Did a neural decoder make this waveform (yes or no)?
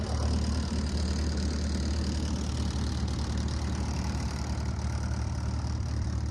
no